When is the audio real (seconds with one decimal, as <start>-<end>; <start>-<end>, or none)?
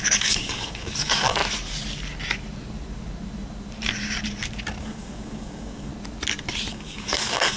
1.4-4.8; 5.9-6.7